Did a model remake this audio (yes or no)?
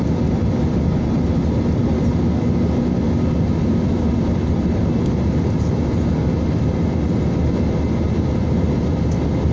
no